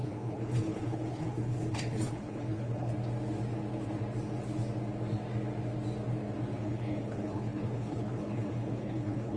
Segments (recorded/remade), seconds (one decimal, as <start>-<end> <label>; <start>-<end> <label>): 0.0-2.9 remade; 2.9-6.6 recorded; 6.6-9.4 remade